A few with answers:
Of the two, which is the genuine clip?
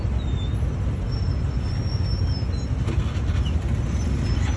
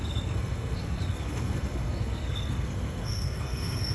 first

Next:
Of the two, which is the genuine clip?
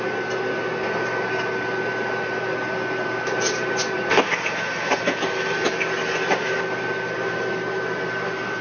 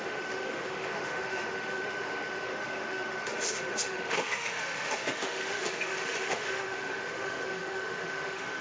first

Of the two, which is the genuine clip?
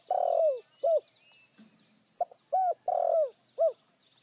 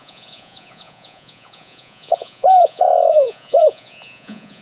first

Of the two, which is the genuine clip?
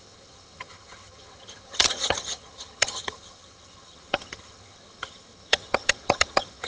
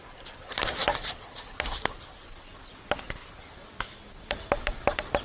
second